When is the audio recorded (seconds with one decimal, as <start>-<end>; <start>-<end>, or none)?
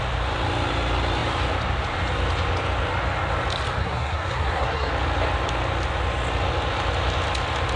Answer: 0.0-3.8; 4.9-7.8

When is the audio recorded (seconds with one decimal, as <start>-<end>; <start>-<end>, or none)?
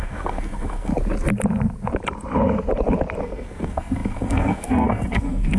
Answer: 0.9-3.2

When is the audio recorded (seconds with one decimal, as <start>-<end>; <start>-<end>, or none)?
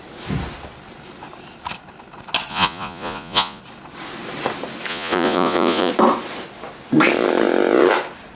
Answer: 0.0-2.5; 3.6-4.9; 5.9-8.3